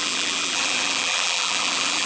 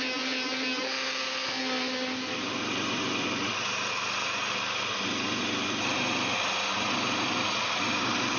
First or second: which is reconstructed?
first